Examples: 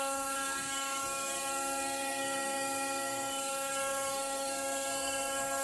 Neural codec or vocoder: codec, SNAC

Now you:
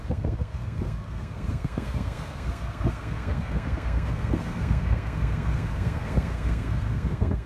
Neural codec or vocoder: codec, SNAC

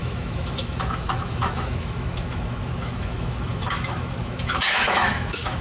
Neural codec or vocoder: autoencoder, DAC-VAE